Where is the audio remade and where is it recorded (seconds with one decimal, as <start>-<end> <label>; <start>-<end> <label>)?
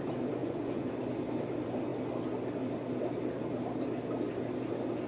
0.0-0.4 recorded; 0.4-0.9 remade; 0.9-5.1 recorded